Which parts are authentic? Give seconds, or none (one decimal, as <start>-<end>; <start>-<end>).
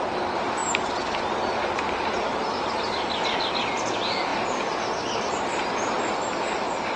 0.0-7.0